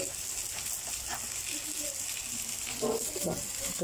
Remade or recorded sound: recorded